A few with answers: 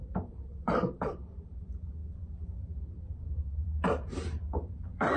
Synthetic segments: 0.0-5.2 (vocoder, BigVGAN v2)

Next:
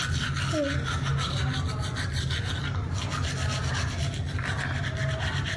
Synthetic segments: none